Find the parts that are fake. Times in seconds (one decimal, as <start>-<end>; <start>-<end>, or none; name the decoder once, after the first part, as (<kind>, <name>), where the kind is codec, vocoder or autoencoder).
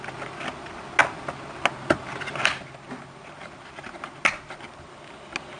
none